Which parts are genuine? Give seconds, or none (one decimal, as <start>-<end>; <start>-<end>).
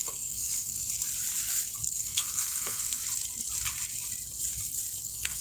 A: 0.9-1.9; 3.0-5.0